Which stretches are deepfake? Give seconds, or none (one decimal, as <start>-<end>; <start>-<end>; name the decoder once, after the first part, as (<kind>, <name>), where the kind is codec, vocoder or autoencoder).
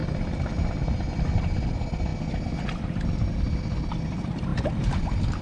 4.5-5.0 (vocoder, BigVGAN v2)